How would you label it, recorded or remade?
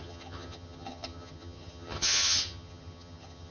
remade